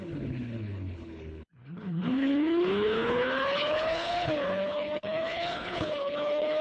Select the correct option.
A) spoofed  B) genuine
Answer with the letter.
A